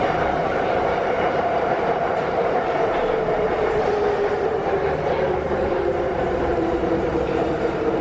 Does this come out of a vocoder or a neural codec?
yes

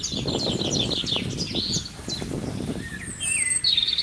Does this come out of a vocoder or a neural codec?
no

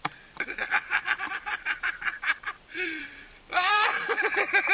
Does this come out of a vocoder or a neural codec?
yes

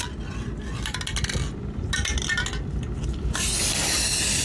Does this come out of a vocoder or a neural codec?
no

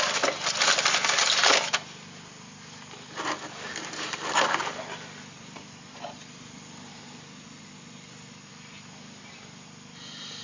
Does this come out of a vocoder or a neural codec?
no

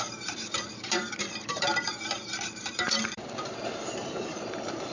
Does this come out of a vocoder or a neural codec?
yes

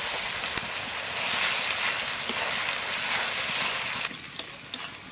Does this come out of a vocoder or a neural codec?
no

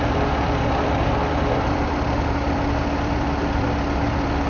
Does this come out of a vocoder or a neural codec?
yes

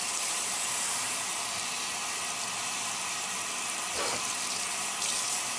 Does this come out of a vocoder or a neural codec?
no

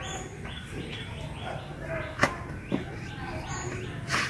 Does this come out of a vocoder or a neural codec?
no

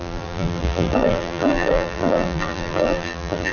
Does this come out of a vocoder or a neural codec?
yes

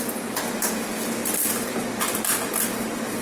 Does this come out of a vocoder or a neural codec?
no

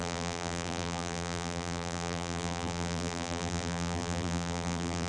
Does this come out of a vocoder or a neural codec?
yes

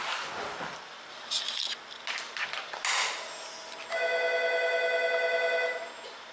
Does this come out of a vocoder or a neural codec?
no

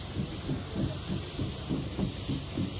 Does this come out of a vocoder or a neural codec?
no